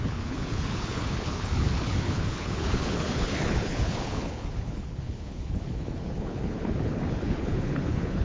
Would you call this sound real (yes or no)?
no